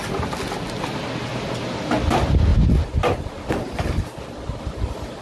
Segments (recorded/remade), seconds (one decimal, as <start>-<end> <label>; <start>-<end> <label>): 0.0-5.2 recorded